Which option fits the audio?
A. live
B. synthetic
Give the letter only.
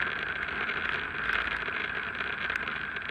A